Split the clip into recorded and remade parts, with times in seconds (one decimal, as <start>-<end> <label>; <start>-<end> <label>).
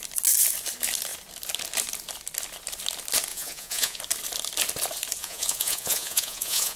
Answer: 0.0-3.3 recorded; 3.3-4.0 remade; 4.0-5.2 recorded; 5.2-6.8 remade